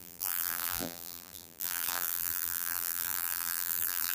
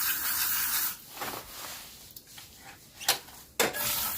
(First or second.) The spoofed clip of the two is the first